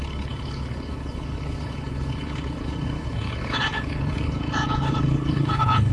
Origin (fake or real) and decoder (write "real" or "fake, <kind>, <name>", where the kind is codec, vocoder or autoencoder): fake, codec, HILCodec